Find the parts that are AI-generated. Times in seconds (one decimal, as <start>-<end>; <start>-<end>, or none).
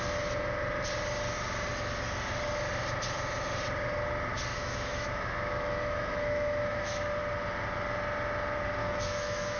4.5-7.2; 8.8-9.6